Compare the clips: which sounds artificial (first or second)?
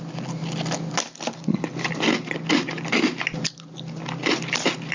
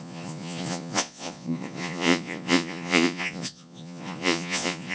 second